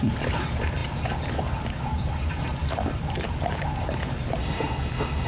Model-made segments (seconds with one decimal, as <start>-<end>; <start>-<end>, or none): 4.4-5.3